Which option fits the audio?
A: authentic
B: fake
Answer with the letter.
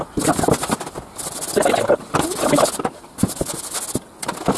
A